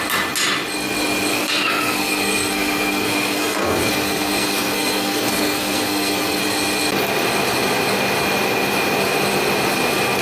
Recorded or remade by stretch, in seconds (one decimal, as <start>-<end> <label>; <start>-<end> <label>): 0.0-1.3 recorded; 1.3-6.4 remade; 6.4-10.2 recorded